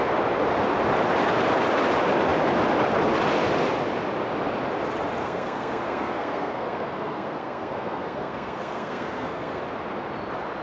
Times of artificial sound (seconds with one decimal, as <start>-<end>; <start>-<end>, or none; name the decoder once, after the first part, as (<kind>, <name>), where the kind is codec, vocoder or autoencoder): 5.2-9.6 (codec, SNAC)